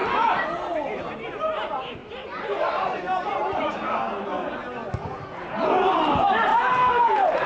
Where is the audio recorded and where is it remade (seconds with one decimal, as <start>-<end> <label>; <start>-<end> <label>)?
0.0-2.0 recorded; 2.0-3.7 remade; 3.7-6.5 recorded; 6.5-7.5 remade